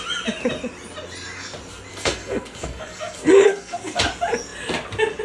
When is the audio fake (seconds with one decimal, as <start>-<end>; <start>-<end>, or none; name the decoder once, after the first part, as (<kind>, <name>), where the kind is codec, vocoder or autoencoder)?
1.9-4.0 (codec, SNAC)